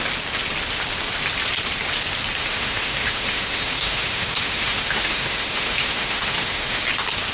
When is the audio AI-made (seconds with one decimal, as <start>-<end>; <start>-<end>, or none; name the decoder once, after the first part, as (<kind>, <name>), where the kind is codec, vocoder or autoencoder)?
2.4-6.8 (autoencoder, DAC-VAE)